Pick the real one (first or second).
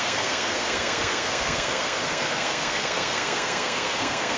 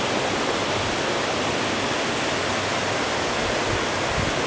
second